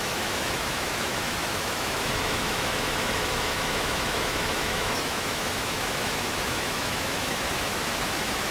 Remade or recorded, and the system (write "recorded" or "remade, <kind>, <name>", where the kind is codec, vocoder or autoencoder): remade, autoencoder, DAC-VAE